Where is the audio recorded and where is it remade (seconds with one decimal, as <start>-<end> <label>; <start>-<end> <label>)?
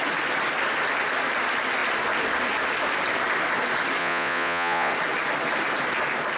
0.0-4.0 recorded; 4.0-4.9 remade; 4.9-6.4 recorded